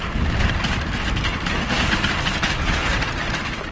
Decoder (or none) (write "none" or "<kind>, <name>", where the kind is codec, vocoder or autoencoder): none